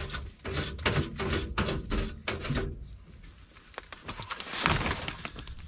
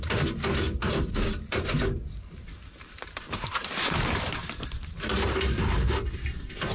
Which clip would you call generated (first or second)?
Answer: second